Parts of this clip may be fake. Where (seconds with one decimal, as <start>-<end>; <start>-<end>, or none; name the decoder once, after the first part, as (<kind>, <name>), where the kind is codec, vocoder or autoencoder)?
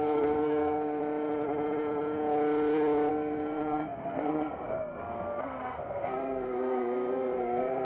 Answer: 0.0-1.0 (codec, SNAC); 3.1-7.8